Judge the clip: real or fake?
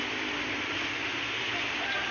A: real